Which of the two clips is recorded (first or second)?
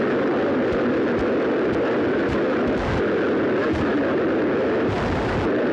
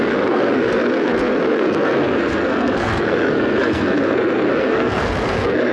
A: first